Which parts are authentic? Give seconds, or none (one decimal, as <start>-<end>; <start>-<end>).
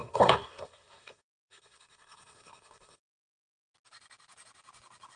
3.1-5.2